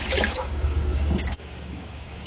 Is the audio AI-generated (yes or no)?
yes